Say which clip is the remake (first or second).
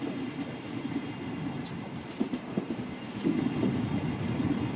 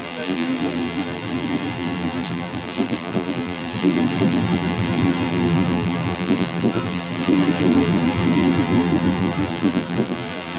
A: second